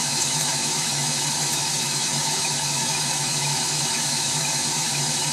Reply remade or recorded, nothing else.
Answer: remade